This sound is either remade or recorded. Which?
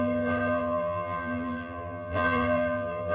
remade